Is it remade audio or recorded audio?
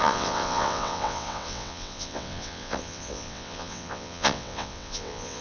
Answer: remade